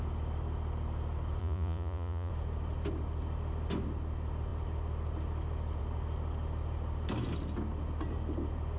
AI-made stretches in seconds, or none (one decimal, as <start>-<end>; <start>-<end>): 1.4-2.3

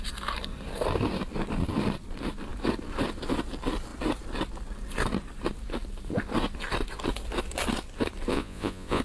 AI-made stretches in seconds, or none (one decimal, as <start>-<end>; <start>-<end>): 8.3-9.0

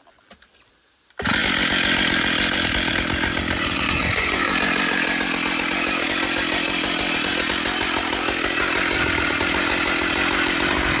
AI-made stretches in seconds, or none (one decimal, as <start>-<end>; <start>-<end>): 3.6-4.5

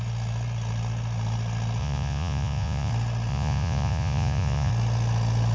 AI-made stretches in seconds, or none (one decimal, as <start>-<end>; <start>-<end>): 1.8-2.9; 3.3-4.7

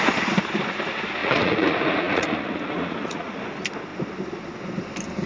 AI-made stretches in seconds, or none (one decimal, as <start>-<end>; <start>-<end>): 1.2-3.4